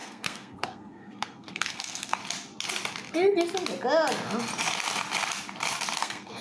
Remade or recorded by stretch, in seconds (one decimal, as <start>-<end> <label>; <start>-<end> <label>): 0.0-2.2 remade; 2.2-6.0 recorded; 6.0-6.4 remade